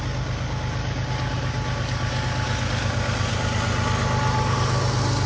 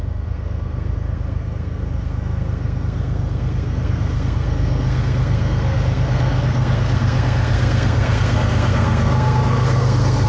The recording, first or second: first